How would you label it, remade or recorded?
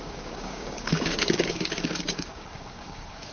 remade